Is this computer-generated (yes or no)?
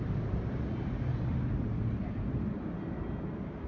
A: no